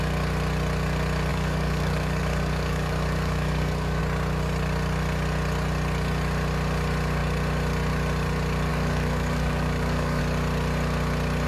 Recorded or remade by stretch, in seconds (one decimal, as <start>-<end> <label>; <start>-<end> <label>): 0.0-1.3 recorded; 1.3-4.0 remade; 4.0-8.7 recorded; 8.7-10.2 remade; 10.2-11.5 recorded